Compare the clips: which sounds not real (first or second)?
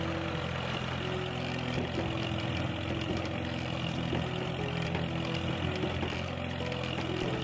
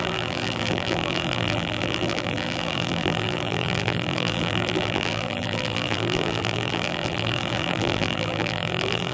second